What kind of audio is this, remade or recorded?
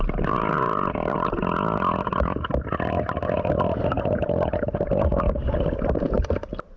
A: recorded